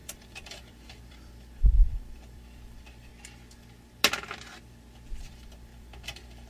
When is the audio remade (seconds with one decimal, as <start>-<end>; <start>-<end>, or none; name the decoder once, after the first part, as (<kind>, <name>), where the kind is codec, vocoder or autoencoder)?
0.0-3.1 (vocoder, BigVGAN v2); 5.2-6.5